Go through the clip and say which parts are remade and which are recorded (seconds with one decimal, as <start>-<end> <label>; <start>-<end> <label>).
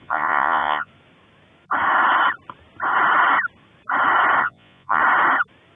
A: 0.0-0.9 remade; 0.9-4.4 recorded; 4.4-5.0 remade; 5.0-5.8 recorded